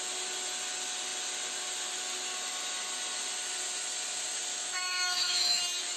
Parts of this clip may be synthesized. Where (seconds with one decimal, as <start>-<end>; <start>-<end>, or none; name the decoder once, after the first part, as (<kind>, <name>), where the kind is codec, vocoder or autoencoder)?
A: 4.5-5.6 (autoencoder, DAC-VAE)